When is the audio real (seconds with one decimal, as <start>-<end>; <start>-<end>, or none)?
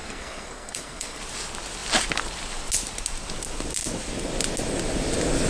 1.2-5.5